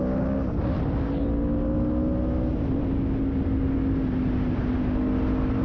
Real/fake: real